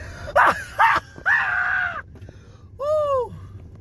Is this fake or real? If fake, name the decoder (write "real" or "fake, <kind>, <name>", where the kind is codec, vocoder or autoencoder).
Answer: real